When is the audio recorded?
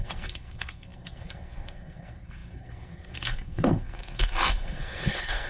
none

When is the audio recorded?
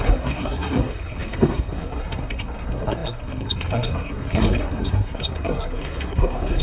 none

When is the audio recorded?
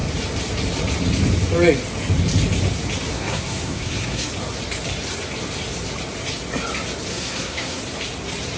0.0-3.1; 4.3-7.1; 7.8-8.6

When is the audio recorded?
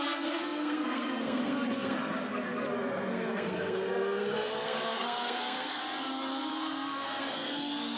5.8-6.5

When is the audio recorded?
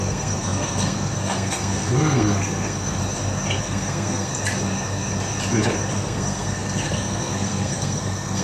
3.0-3.6; 4.3-5.9